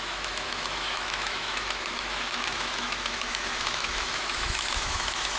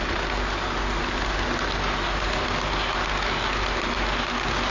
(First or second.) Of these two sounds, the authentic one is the second